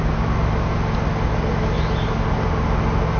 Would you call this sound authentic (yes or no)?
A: yes